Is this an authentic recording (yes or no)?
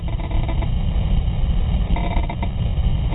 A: yes